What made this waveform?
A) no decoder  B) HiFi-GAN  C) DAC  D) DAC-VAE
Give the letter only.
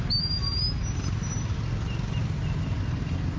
A